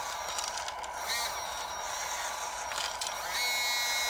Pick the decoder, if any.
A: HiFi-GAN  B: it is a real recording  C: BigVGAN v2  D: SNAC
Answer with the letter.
B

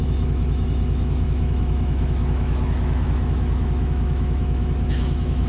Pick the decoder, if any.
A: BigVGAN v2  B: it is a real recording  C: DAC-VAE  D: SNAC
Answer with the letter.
C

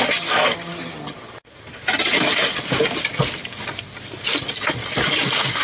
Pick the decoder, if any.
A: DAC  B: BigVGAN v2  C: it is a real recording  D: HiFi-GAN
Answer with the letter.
B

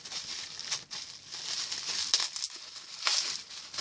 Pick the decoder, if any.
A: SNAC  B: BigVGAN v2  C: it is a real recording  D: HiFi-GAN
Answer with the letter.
C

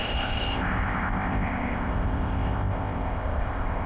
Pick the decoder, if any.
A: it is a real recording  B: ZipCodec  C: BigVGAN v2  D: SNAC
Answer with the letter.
B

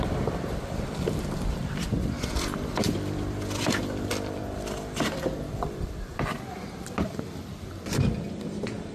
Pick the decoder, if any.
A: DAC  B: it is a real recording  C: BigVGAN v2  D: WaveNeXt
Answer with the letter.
C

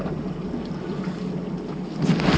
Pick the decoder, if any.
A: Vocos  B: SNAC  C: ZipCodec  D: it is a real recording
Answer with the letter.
D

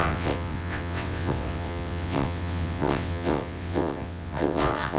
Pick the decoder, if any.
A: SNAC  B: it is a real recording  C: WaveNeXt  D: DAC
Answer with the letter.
C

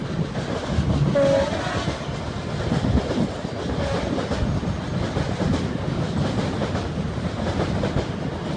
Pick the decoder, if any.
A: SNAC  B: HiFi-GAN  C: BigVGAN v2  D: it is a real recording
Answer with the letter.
D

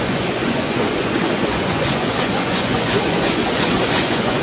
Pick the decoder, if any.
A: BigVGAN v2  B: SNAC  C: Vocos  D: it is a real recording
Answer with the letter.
C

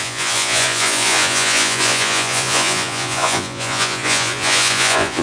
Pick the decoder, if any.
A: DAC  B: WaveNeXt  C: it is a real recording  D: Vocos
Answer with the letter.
D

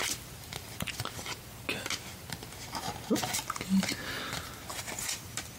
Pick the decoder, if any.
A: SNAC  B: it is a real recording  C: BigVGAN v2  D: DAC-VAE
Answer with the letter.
B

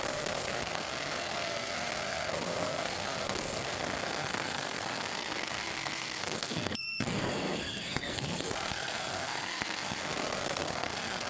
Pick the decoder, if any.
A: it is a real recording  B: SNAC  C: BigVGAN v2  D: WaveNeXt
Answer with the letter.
B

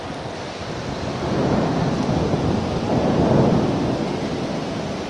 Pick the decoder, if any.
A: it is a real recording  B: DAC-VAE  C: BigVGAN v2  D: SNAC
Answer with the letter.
A